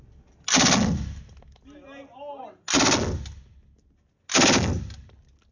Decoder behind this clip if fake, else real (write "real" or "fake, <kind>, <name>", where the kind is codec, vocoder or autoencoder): real